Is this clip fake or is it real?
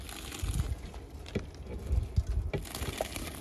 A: real